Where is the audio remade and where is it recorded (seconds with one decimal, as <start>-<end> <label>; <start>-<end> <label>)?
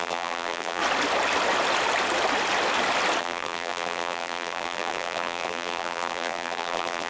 0.0-0.8 remade; 0.8-3.2 recorded; 3.2-7.1 remade